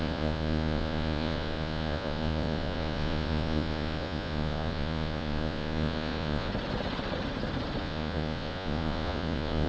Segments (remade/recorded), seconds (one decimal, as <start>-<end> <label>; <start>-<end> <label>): 0.0-6.5 remade; 6.5-7.8 recorded; 7.8-9.7 remade